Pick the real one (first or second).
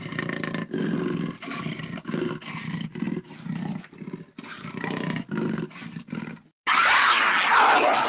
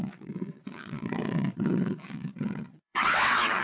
first